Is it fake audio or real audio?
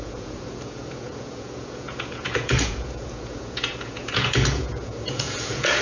fake